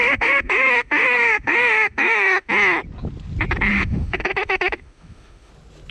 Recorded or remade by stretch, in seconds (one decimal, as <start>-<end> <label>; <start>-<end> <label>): 0.0-2.5 remade; 2.5-3.7 recorded; 3.7-5.5 remade; 5.5-5.9 recorded